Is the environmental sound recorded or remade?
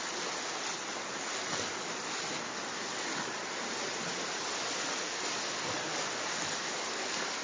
recorded